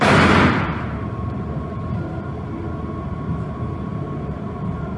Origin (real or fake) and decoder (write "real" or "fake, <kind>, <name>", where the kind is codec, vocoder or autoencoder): fake, vocoder, BigVGAN v2